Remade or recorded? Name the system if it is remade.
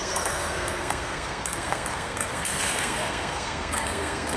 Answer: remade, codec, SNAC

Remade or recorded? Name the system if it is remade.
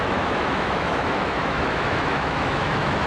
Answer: remade, autoencoder, DAC-VAE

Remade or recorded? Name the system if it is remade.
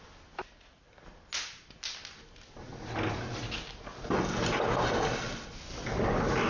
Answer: recorded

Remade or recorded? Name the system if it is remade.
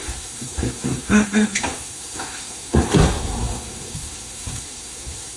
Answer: remade, codec, SNAC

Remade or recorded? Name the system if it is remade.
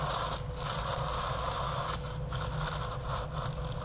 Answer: recorded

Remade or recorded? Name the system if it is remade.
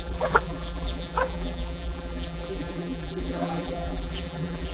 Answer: remade, vocoder, BigVGAN v2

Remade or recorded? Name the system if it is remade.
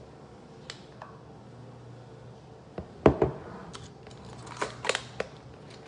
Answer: recorded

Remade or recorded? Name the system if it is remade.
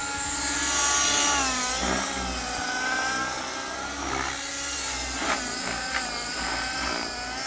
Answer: recorded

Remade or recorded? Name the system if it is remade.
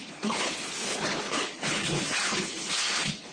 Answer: remade, codec, HILCodec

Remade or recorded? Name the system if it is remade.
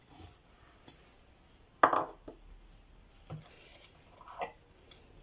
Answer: recorded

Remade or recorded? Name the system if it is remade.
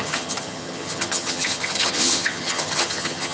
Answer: remade, vocoder, HiFi-GAN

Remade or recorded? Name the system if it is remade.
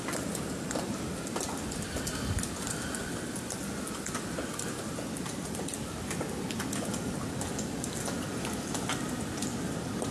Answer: recorded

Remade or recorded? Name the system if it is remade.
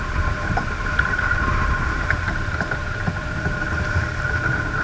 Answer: remade, vocoder, BigVGAN v2